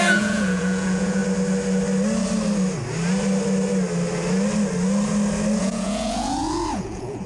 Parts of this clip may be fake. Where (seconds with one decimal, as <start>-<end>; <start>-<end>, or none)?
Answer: 0.0-1.2; 5.6-7.3